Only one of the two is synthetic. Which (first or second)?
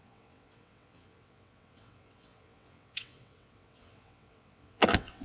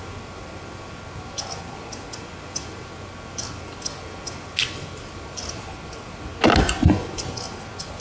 first